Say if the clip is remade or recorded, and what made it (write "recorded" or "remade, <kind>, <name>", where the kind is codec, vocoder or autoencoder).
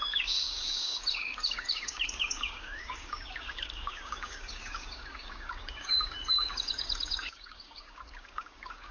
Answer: remade, codec, DAC